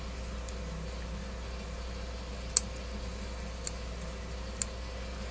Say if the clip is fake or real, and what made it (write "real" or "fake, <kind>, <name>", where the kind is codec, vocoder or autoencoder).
real